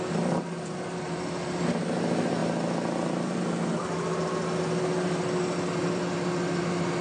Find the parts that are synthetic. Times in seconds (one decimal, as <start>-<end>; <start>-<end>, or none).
none